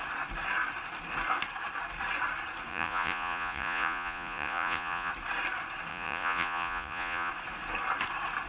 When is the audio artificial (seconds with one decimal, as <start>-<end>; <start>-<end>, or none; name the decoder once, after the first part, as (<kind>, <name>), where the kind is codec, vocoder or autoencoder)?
2.7-5.1 (vocoder, Vocos); 5.9-7.3